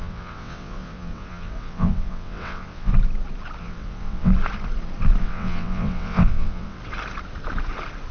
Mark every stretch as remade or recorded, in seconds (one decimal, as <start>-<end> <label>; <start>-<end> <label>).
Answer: 0.0-2.9 remade; 2.9-3.6 recorded; 3.6-4.3 remade; 4.3-5.2 recorded; 5.2-6.8 remade; 6.8-8.1 recorded